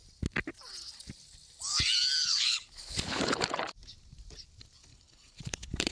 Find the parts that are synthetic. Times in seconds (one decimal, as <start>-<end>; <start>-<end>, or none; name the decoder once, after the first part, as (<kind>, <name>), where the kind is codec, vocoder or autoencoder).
2.2-3.6 (codec, HILCodec); 4.9-5.9